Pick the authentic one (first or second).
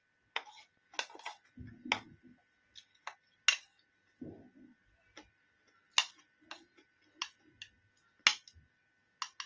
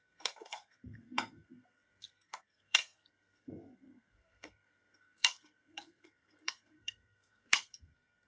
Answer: first